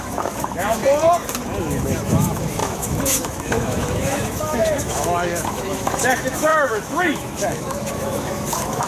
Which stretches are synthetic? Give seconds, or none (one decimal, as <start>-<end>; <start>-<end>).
0.0-0.8; 1.6-8.9